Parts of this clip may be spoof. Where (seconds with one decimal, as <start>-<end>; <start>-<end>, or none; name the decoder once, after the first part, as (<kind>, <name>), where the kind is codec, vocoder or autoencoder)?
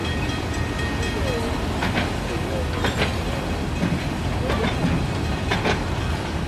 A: 0.0-0.8 (vocoder, BigVGAN v2)